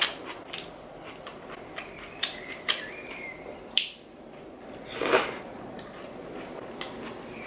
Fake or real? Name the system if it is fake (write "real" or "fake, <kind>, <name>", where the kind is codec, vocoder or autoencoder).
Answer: fake, vocoder, BigVGAN v2